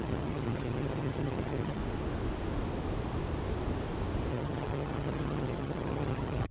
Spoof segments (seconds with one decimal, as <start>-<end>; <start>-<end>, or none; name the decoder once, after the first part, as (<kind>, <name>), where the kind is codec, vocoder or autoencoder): 0.0-1.8 (vocoder, HiFi-GAN); 4.3-6.5